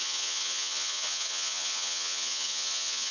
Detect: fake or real fake